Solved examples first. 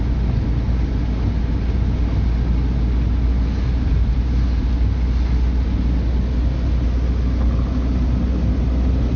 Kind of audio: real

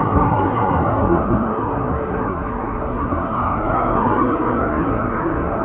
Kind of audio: fake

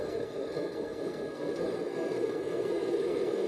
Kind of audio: fake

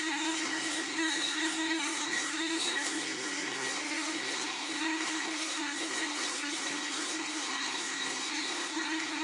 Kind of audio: fake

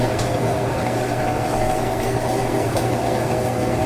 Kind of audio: fake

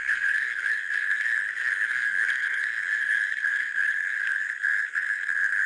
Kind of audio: fake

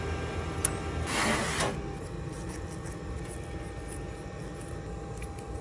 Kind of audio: real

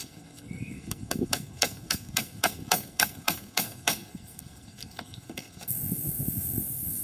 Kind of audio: fake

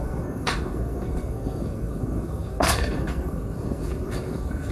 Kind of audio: fake